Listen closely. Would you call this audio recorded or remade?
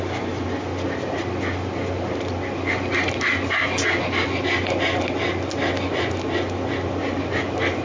recorded